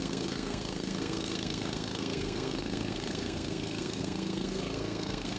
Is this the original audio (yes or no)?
no